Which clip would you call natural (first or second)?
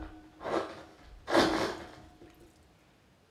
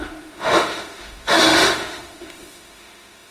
first